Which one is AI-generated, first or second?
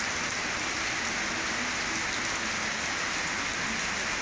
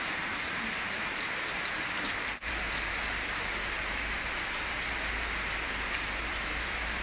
second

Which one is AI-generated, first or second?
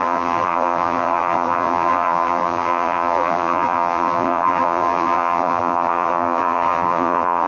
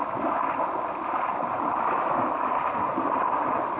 first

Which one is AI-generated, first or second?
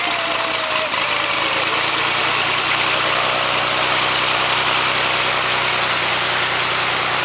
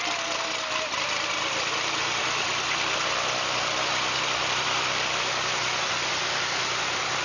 second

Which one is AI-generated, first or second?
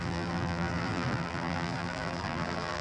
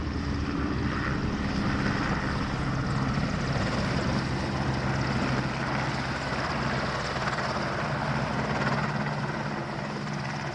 first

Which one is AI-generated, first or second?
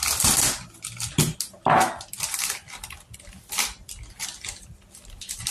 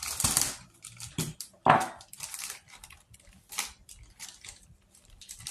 second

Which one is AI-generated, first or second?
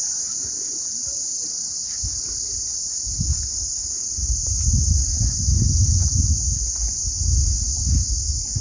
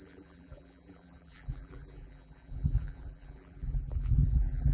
second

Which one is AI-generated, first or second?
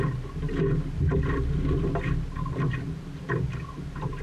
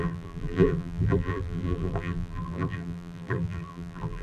second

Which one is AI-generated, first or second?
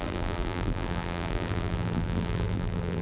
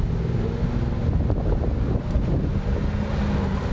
first